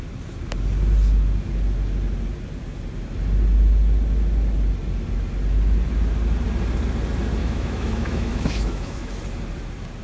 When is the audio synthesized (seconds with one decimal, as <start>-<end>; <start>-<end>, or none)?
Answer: 7.4-9.1